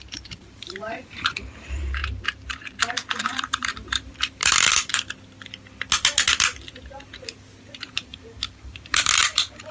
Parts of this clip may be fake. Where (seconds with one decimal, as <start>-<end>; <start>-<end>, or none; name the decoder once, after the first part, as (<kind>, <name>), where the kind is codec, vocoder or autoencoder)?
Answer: 0.0-4.9 (vocoder, BigVGAN v2); 7.7-9.7